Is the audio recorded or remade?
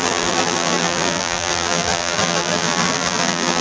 remade